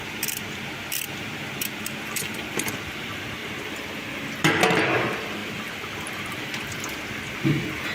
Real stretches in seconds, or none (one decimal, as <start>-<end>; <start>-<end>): none